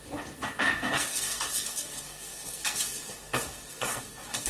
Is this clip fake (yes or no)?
yes